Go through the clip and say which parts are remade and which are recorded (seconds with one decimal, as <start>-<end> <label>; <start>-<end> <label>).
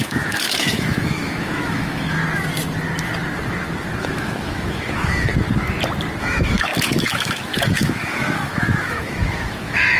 0.0-2.2 remade; 2.2-4.0 recorded; 4.0-5.3 remade; 5.3-6.2 recorded; 6.2-10.0 remade